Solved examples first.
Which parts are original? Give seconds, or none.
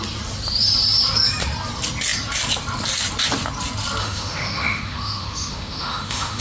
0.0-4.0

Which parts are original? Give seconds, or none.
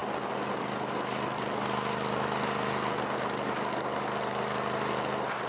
0.0-5.5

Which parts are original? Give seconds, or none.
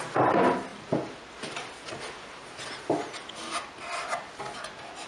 0.0-5.1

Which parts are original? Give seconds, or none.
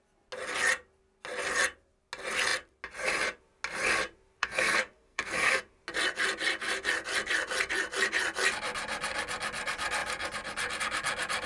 0.0-4.4; 5.6-11.5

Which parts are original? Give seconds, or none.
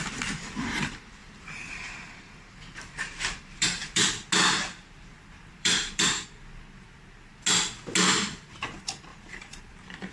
0.0-1.2; 4.1-5.5; 6.3-9.1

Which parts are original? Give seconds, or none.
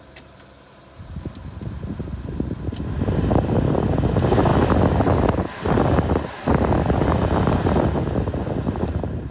0.0-9.3